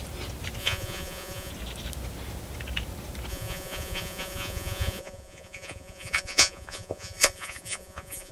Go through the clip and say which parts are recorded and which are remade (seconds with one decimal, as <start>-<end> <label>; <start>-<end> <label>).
0.0-0.6 recorded; 0.6-1.5 remade; 1.5-3.3 recorded; 3.3-8.3 remade

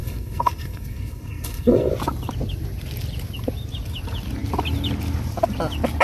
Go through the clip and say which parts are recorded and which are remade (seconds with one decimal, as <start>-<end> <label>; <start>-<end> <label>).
0.0-1.9 remade; 1.9-6.0 recorded

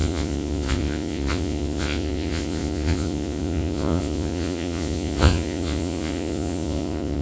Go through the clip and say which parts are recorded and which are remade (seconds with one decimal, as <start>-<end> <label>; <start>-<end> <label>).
0.0-7.2 remade